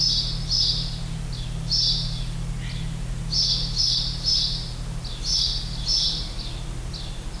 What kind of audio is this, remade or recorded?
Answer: recorded